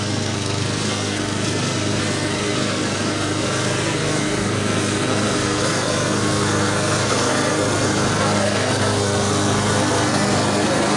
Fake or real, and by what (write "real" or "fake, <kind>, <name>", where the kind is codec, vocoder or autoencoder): fake, codec, SNAC